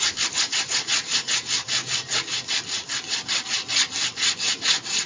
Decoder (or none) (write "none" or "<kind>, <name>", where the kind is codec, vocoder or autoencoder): none